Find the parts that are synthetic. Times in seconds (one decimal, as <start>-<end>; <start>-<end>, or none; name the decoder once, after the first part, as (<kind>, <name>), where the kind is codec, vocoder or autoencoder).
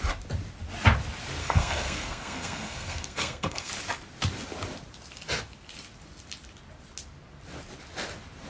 1.4-3.7 (codec, SNAC)